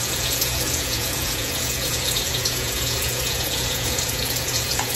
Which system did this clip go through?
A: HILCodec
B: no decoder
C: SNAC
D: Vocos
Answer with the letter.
D